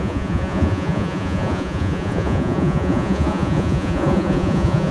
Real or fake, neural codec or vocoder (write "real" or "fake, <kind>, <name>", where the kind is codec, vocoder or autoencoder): fake, vocoder, Vocos